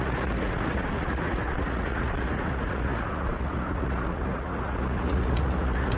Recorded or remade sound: remade